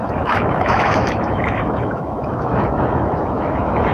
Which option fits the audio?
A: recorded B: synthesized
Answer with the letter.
B